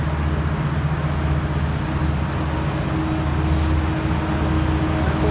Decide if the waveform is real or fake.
real